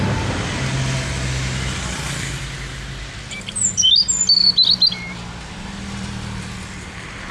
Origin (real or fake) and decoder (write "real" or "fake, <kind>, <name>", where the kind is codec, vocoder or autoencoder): real